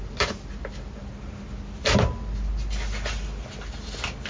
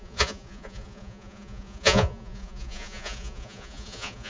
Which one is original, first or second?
first